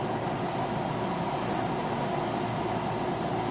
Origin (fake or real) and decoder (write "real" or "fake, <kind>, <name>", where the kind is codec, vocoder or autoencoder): real